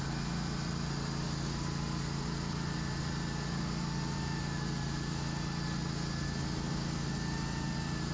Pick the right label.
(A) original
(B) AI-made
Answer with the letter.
A